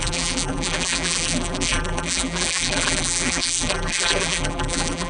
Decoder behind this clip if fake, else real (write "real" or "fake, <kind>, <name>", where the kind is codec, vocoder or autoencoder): fake, vocoder, BigVGAN v2